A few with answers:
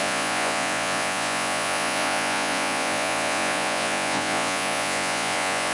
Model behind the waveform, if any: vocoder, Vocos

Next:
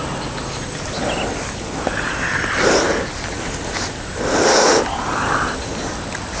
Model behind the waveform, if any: none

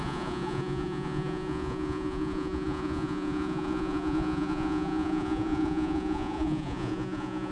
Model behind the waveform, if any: vocoder, Vocos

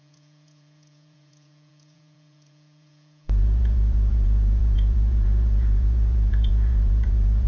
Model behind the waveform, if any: vocoder, Vocos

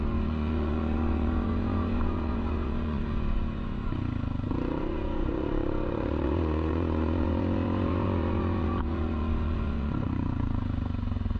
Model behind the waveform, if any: vocoder, Vocos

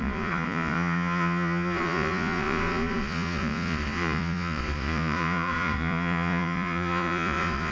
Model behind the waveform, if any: vocoder, Vocos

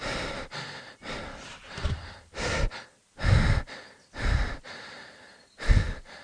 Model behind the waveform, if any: none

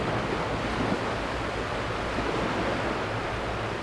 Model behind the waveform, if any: none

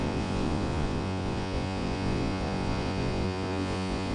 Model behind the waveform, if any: vocoder, Vocos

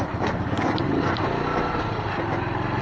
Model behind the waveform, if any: none